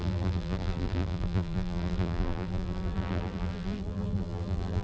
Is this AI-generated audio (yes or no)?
yes